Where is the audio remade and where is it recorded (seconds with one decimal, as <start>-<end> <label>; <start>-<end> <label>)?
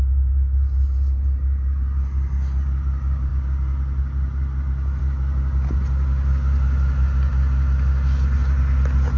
0.0-9.2 recorded